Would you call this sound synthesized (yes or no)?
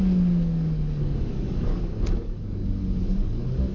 yes